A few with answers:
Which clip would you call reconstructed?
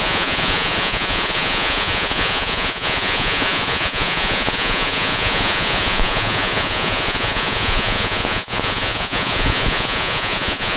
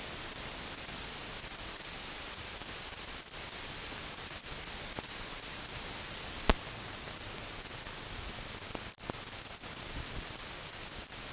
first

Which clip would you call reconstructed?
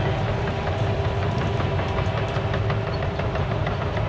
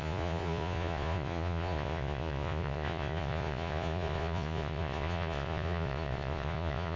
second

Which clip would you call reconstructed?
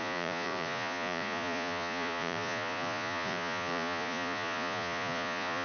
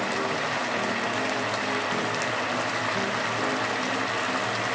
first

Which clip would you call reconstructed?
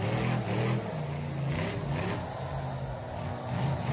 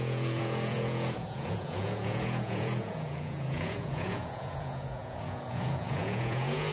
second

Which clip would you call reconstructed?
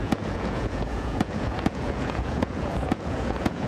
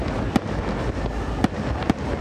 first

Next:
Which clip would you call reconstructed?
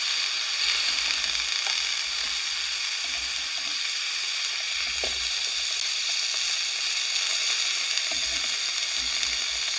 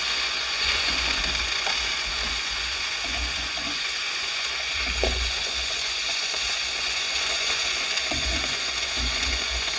second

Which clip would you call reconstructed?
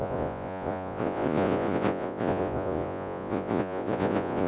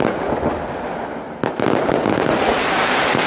first